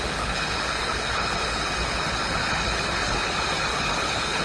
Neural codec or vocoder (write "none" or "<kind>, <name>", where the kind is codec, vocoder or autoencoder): codec, HILCodec